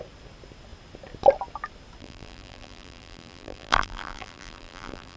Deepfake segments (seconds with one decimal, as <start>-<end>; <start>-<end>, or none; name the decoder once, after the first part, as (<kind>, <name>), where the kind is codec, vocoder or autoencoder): 2.0-5.2 (vocoder, BigVGAN v2)